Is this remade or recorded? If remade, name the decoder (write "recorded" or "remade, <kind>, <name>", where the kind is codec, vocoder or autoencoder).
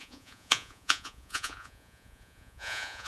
remade, vocoder, Vocos